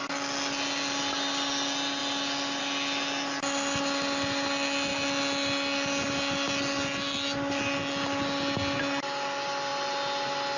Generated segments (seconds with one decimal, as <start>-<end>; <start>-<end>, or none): none